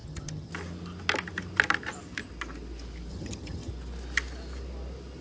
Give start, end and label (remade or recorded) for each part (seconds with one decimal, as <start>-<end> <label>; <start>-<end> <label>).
0.0-0.5 remade; 0.5-3.1 recorded; 3.1-3.7 remade; 3.7-5.2 recorded